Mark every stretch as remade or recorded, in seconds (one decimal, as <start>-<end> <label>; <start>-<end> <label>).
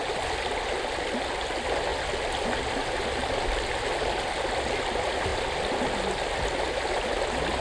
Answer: 0.0-7.6 recorded